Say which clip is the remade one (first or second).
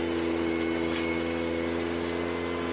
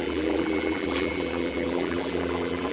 second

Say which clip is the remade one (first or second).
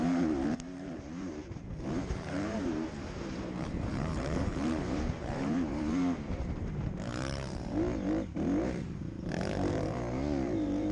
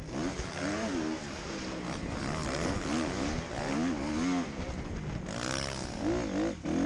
first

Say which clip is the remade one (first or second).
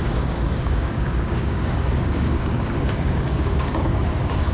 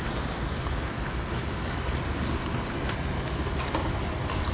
first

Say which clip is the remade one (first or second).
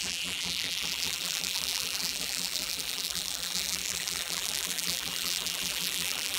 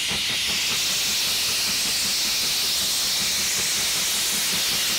first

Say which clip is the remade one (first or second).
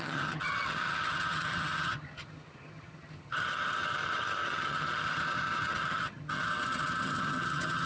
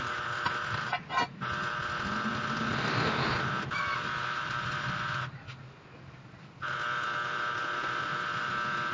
first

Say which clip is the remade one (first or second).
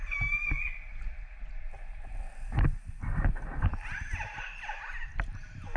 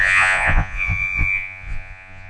second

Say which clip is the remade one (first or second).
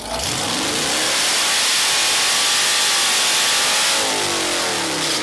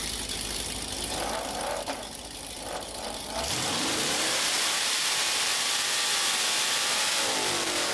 second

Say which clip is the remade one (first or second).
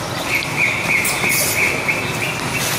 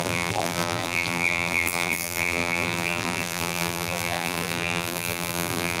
second